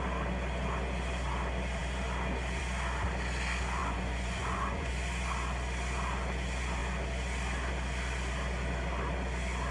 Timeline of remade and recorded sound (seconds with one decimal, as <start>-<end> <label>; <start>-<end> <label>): 0.0-3.8 recorded; 3.8-4.9 remade; 4.9-9.7 recorded